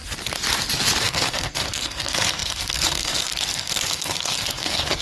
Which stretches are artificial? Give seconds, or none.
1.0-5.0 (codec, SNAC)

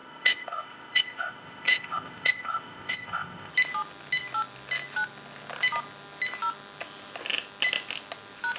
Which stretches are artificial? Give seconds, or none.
0.0-3.5 (codec, ZipCodec)